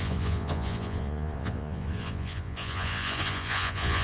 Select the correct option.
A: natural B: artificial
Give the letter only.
B